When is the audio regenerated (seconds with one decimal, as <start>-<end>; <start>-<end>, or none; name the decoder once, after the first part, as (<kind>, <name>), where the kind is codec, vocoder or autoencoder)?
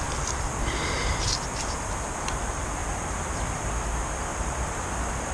2.8-3.7 (vocoder, BigVGAN v2); 4.3-5.3